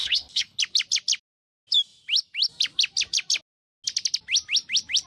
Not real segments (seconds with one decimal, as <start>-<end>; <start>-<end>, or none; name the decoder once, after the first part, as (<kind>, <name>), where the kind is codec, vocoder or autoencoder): 0.0-0.6 (codec, HILCodec)